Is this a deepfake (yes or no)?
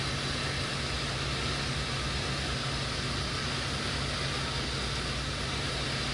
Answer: no